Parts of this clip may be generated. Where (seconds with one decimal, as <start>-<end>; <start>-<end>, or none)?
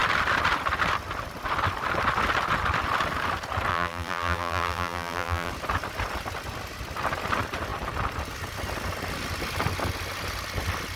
3.7-5.5